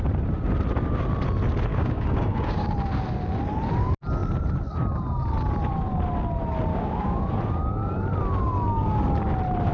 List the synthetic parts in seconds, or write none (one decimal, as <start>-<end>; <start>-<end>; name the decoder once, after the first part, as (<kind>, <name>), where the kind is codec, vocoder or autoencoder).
1.7-2.7 (codec, DAC); 6.7-7.2